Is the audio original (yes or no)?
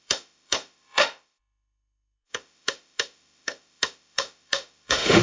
no